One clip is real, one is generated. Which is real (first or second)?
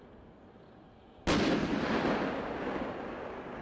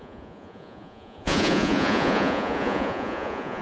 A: first